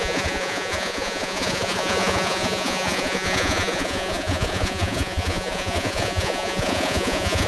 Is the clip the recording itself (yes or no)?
no